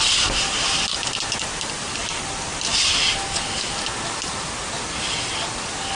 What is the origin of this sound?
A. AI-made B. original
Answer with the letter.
B